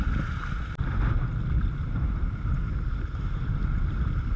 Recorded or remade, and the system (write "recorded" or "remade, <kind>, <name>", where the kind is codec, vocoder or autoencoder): recorded